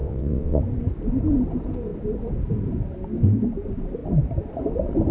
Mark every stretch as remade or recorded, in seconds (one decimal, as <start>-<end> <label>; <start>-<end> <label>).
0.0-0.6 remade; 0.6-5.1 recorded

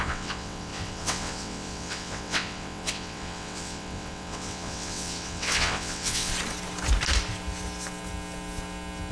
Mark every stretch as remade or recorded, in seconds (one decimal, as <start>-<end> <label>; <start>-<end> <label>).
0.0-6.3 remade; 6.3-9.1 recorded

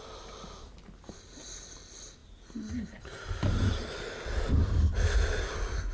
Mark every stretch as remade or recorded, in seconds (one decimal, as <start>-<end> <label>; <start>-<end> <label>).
0.0-5.9 recorded